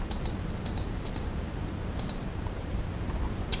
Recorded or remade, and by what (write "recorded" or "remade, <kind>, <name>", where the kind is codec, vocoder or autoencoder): remade, vocoder, BigVGAN v2